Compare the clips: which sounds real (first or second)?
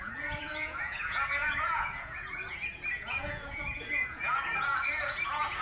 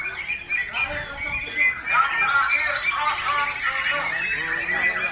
second